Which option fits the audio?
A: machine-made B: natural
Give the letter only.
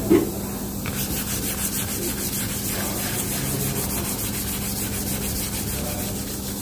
B